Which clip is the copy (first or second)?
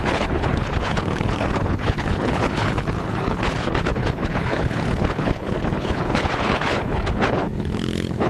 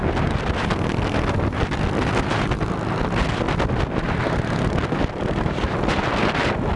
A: first